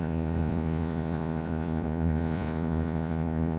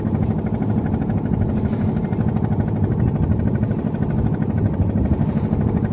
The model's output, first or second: first